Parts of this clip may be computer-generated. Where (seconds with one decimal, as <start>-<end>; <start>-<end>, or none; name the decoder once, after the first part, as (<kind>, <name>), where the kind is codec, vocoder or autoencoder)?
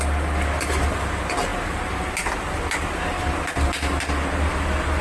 none